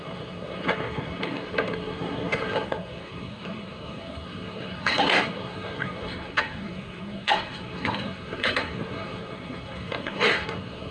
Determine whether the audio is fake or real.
fake